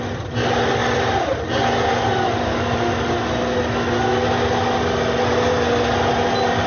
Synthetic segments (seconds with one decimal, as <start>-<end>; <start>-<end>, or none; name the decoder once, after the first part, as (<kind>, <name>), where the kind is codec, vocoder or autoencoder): none

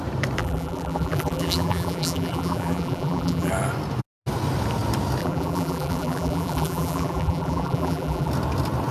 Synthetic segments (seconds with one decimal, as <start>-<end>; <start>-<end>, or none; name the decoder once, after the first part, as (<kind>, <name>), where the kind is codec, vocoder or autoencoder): 0.4-3.5 (vocoder, BigVGAN v2); 5.2-8.3

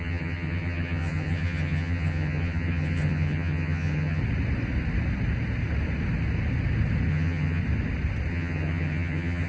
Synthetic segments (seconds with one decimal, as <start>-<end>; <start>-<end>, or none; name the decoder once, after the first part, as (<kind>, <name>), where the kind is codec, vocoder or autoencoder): 0.0-4.2 (vocoder, HiFi-GAN); 7.1-7.6; 8.3-9.5

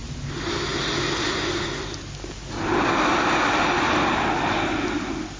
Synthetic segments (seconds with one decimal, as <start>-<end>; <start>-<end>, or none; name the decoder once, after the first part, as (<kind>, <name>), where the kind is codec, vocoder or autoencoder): none

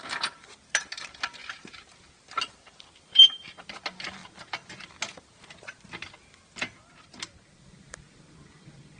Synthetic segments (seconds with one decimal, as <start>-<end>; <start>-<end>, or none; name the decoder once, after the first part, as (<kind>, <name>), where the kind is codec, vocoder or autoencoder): 0.0-4.2 (vocoder, BigVGAN v2); 7.0-9.0